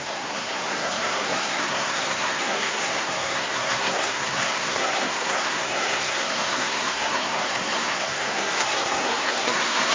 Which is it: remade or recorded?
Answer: remade